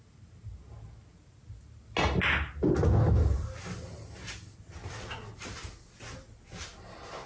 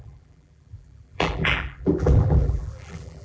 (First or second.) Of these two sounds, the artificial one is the second